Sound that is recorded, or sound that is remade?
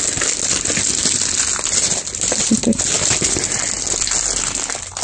recorded